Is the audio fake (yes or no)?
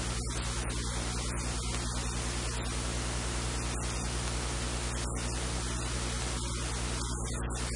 no